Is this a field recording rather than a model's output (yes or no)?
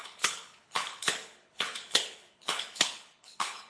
no